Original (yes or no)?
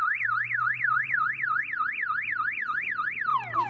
yes